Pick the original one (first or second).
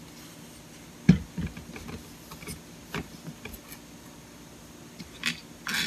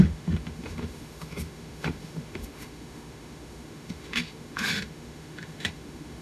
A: first